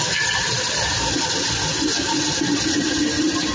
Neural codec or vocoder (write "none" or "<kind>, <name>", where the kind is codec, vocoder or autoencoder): none